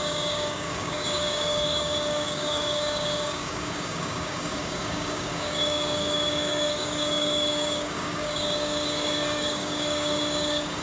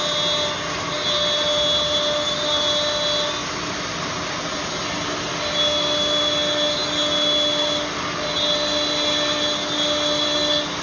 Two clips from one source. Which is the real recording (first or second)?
second